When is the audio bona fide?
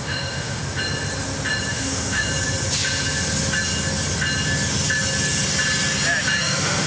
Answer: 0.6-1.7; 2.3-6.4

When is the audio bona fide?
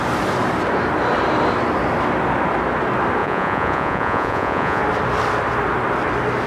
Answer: 0.0-3.2; 4.8-6.5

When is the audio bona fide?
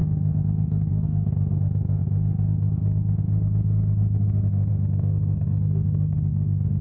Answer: none